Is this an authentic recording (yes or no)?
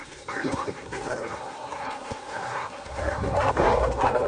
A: no